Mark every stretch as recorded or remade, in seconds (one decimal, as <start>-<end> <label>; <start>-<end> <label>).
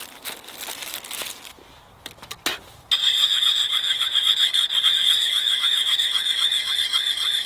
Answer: 0.0-3.2 recorded; 3.2-6.7 remade; 6.7-7.5 recorded